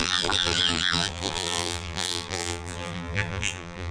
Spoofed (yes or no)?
yes